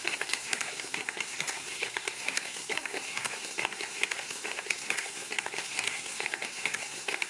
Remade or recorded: remade